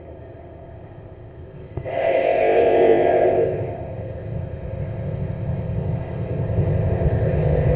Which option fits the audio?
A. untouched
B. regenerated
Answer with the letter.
B